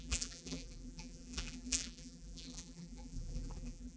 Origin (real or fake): fake